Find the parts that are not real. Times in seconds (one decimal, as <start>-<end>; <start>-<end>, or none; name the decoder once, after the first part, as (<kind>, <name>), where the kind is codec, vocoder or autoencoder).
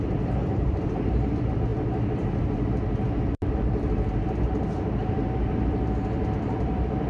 0.0-1.7 (vocoder, BigVGAN v2); 3.3-7.1